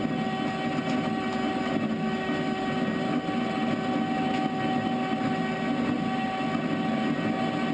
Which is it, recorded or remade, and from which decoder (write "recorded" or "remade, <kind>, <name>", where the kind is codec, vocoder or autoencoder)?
recorded